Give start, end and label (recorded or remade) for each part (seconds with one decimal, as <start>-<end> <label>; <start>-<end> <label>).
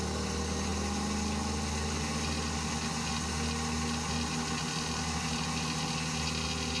0.0-6.8 recorded